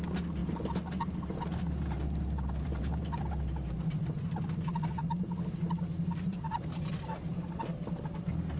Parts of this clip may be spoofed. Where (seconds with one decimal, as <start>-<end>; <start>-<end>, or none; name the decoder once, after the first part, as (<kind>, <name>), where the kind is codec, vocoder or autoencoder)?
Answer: 0.4-4.2 (vocoder, BigVGAN v2)